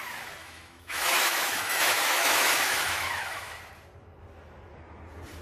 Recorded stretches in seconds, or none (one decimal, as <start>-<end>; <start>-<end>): 0.0-0.4; 3.6-5.4